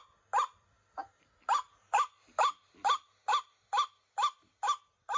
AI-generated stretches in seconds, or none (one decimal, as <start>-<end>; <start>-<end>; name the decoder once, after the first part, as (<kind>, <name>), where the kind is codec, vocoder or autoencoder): none